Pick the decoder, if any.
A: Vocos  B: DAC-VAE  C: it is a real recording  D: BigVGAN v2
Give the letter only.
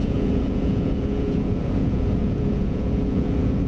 A